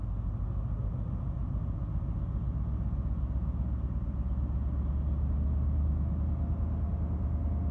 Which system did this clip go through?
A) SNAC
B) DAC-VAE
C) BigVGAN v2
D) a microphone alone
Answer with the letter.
D